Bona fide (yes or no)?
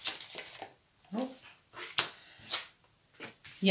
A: yes